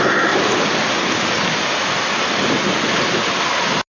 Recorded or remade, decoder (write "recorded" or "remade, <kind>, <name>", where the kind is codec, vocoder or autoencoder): recorded